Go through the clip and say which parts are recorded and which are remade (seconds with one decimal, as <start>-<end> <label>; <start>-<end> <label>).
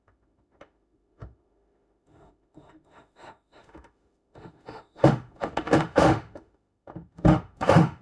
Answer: 0.0-8.0 remade